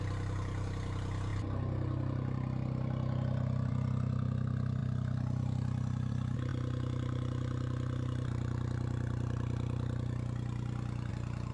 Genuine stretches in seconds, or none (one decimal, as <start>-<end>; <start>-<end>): 0.0-11.5